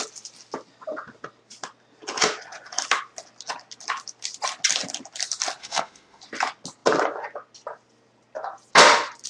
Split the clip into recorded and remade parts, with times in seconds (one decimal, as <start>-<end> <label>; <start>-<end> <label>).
0.0-5.6 recorded; 5.6-6.2 remade; 6.2-9.3 recorded